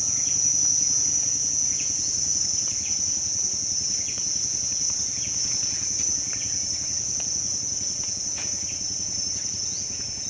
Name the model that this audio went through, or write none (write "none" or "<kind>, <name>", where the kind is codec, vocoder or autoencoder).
vocoder, Vocos